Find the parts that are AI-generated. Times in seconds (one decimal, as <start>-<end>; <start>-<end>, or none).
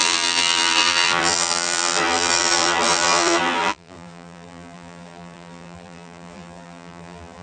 0.0-7.4